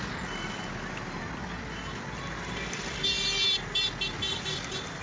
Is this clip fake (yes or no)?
no